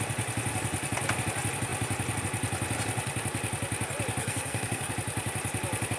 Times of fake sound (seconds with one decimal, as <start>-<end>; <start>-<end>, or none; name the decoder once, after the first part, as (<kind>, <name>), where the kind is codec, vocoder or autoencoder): 4.2-4.9 (codec, SNAC)